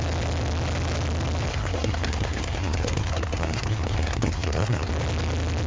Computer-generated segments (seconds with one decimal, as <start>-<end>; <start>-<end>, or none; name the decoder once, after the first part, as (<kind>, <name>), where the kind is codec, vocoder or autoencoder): 1.5-4.9 (codec, SNAC)